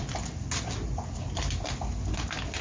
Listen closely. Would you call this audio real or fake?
real